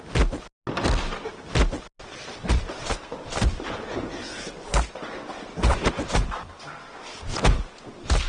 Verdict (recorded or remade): recorded